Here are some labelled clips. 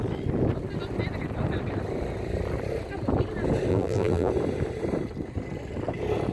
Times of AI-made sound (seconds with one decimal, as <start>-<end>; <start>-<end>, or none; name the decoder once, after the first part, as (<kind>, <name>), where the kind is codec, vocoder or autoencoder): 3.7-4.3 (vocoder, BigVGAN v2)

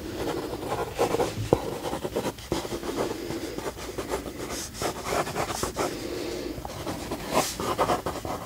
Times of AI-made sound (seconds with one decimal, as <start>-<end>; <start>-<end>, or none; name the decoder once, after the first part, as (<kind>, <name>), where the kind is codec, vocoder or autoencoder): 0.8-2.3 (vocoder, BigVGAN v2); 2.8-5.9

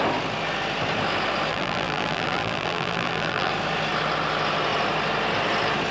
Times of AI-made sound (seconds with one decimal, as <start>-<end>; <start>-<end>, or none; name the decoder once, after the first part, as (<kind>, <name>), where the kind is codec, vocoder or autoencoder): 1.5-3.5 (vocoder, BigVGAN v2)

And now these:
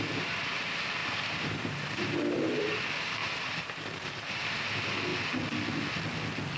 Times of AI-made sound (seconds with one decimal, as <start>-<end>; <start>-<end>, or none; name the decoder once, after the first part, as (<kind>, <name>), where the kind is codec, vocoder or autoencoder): 1.0-2.8 (vocoder, BigVGAN v2); 3.2-4.4

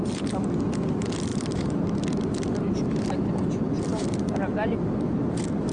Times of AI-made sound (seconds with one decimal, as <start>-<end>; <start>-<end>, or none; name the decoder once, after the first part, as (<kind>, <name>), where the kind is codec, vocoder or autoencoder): 1.3-1.9 (vocoder, BigVGAN v2); 3.9-4.4